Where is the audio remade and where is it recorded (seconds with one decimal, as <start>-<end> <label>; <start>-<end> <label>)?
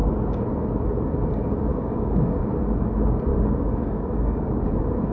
0.0-1.7 recorded; 1.7-2.4 remade; 2.4-3.3 recorded; 3.3-4.6 remade; 4.6-5.1 recorded